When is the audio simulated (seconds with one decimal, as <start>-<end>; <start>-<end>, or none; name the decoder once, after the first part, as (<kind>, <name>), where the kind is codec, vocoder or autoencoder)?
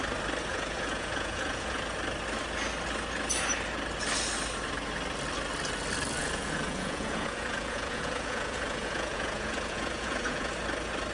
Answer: 0.5-1.8 (vocoder, Vocos); 6.2-10.5